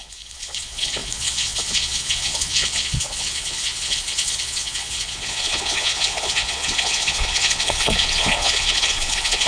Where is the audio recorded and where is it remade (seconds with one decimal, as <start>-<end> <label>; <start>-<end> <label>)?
0.0-9.5 remade